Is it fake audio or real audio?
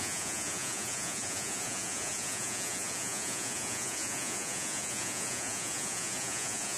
fake